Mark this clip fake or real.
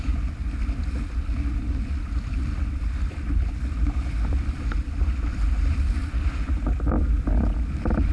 real